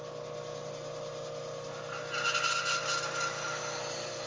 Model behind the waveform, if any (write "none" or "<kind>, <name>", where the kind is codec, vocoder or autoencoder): none